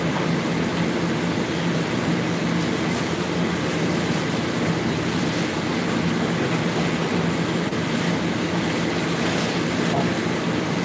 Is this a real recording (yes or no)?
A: yes